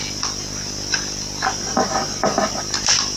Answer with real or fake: real